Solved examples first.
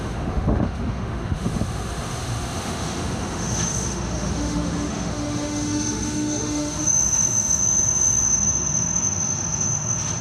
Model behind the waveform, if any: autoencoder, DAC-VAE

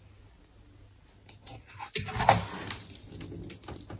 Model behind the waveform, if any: none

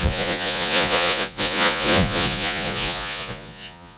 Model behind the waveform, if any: vocoder, Vocos